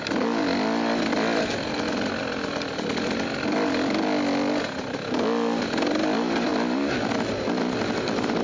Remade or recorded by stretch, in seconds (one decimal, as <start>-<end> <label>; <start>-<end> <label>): 0.0-8.4 recorded